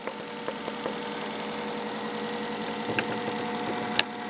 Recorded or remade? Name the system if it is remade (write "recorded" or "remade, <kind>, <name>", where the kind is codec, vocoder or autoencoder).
recorded